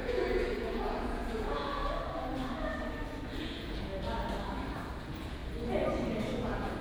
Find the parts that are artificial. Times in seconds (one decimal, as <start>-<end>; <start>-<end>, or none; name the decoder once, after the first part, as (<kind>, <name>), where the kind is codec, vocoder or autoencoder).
0.0-1.8 (vocoder, Vocos); 3.4-3.9; 5.0-5.4; 6.2-6.8